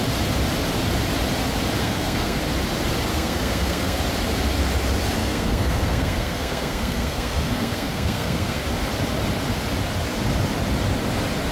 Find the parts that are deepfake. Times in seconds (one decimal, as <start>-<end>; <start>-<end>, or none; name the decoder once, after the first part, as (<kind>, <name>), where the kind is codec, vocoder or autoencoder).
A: 1.8-2.4 (codec, SNAC); 3.1-4.0; 5.2-8.6